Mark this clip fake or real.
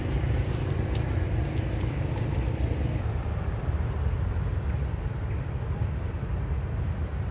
real